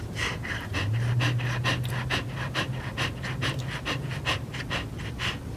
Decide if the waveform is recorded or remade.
recorded